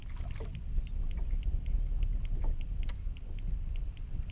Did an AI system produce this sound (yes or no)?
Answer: no